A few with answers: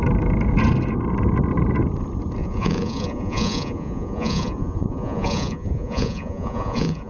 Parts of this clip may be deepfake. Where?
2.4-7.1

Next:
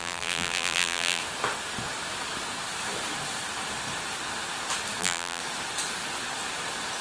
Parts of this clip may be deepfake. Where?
0.0-1.2; 5.0-5.4

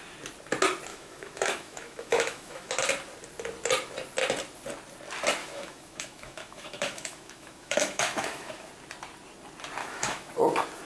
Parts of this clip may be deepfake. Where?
0.9-2.7; 5.4-8.7; 9.8-10.3

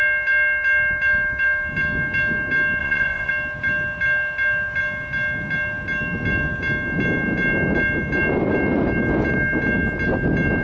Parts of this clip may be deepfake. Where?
2.8-3.3

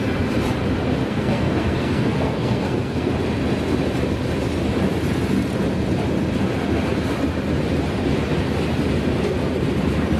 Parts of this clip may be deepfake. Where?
1.0-3.1